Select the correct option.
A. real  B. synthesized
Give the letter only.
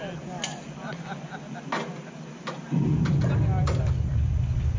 A